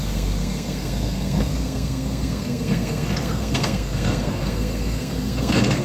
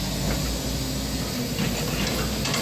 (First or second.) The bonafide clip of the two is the second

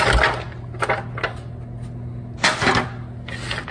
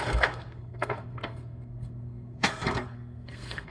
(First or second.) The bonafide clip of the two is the first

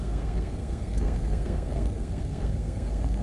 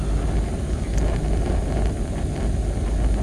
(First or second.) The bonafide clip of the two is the second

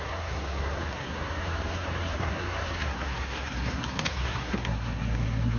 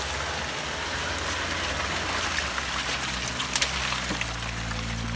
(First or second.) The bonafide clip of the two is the second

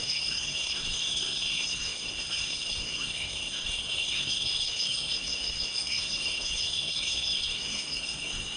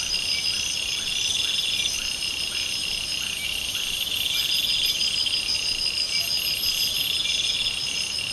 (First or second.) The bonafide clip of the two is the second